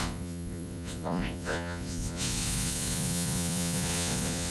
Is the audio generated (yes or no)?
yes